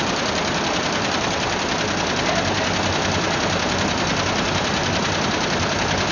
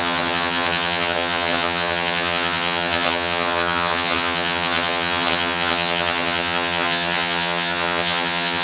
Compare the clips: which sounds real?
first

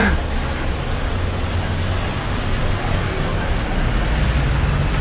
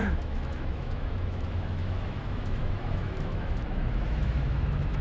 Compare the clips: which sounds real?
first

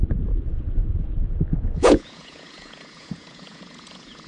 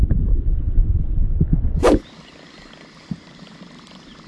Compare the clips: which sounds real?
second